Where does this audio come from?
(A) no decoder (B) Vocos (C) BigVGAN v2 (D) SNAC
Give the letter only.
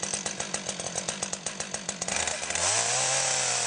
A